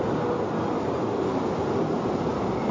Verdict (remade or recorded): recorded